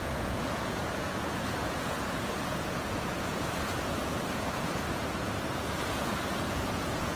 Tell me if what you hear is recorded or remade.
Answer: remade